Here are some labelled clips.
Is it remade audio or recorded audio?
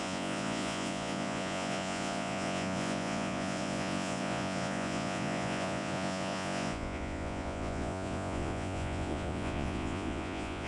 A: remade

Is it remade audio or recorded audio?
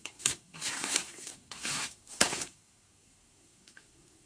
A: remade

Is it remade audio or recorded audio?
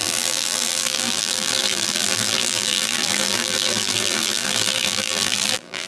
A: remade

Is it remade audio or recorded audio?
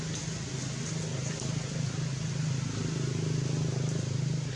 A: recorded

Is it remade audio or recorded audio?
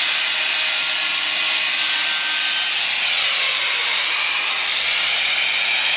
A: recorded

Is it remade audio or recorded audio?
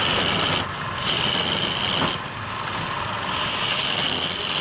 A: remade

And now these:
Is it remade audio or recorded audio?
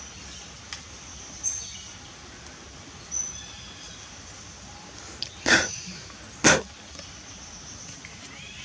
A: recorded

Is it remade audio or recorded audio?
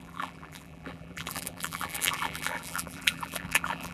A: remade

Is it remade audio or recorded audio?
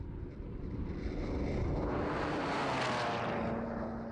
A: recorded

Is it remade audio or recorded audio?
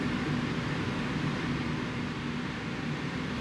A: recorded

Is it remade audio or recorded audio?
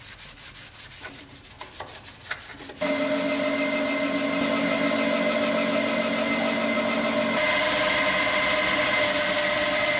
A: recorded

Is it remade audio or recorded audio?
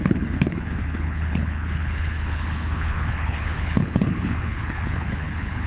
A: remade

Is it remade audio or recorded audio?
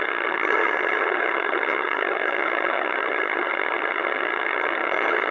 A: remade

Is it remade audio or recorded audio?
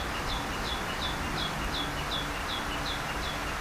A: recorded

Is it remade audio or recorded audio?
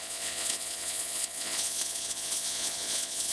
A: remade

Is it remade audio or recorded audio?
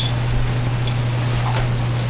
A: recorded